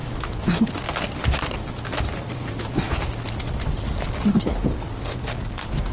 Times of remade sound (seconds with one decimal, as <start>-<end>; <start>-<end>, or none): 0.0-0.6; 2.4-3.2